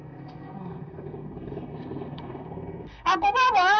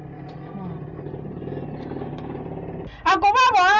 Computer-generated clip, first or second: first